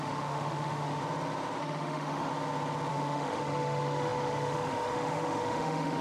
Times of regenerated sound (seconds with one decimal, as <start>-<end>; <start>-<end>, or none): 0.0-1.0; 1.6-2.3; 2.9-6.0